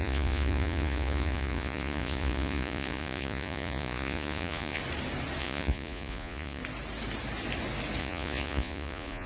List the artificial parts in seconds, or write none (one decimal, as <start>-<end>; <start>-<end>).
0.0-4.8; 5.4-6.6; 8.0-9.3